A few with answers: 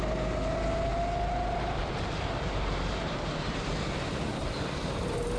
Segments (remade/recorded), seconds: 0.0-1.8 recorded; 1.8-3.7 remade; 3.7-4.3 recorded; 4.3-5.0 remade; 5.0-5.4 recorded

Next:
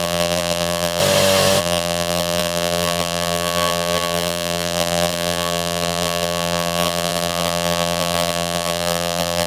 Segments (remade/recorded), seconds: 0.0-1.0 remade; 1.0-1.6 recorded; 1.6-9.5 remade